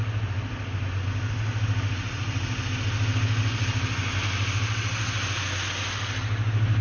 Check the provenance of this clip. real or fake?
real